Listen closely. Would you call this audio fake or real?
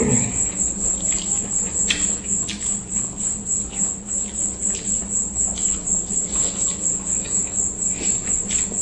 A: real